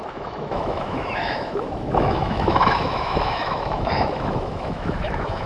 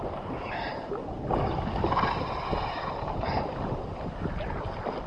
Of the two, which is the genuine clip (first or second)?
second